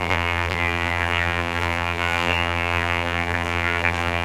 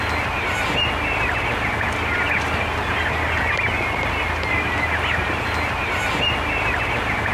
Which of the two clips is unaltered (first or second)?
second